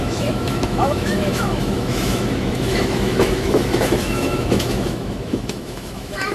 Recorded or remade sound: remade